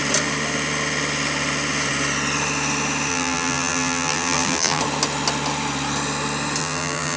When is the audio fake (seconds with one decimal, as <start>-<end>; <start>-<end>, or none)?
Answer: 3.1-4.8; 6.6-7.2